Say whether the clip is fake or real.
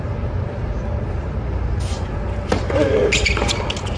real